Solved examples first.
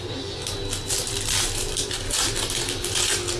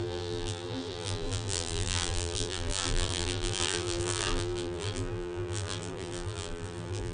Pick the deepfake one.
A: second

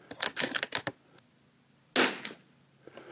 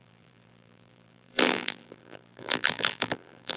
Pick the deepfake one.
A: second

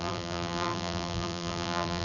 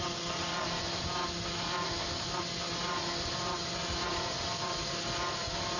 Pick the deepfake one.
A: first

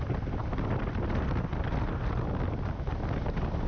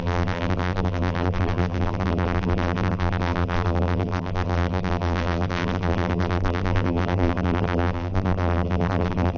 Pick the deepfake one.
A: second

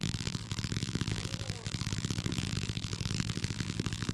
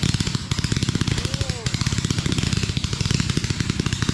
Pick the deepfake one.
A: first